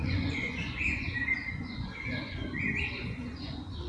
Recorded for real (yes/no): no